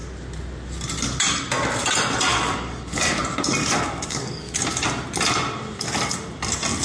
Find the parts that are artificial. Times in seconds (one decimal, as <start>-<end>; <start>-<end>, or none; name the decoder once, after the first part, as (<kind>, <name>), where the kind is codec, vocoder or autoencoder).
2.3-3.2 (codec, DAC); 3.6-4.6